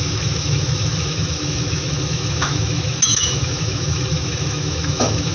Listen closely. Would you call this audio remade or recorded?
remade